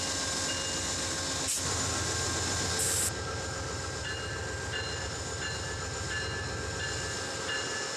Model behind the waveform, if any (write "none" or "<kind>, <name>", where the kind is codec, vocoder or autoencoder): none